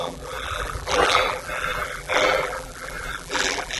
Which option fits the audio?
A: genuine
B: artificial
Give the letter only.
B